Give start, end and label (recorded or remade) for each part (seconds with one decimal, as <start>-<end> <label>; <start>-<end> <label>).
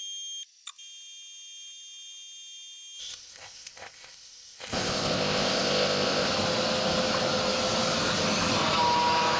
0.0-3.0 recorded; 3.0-6.3 remade; 6.3-9.4 recorded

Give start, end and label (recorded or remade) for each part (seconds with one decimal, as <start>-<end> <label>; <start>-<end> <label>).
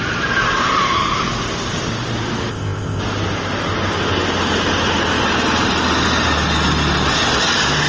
0.0-2.5 recorded; 2.5-3.0 remade; 3.0-7.9 recorded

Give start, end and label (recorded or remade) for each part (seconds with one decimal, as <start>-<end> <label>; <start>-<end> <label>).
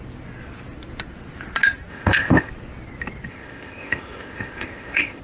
0.0-1.9 recorded; 1.9-2.5 remade; 2.5-3.3 recorded; 3.3-5.2 remade